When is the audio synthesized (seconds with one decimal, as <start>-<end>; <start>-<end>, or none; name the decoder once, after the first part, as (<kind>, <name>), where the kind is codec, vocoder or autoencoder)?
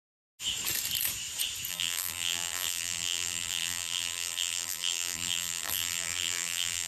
1.7-6.9 (vocoder, BigVGAN v2)